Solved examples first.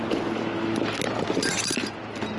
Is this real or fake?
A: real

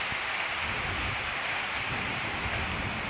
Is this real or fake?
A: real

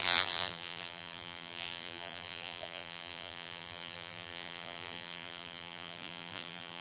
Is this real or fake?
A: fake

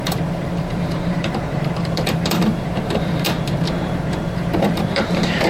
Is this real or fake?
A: fake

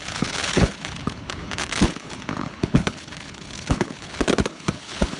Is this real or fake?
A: fake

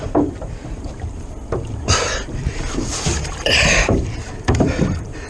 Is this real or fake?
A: fake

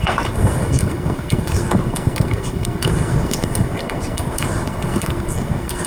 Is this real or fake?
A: fake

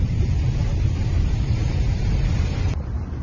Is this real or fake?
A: fake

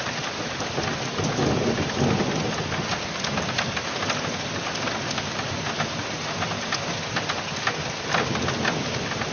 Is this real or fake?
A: real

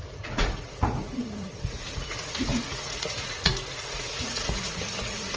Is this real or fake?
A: fake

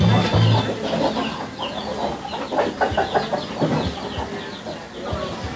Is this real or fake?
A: real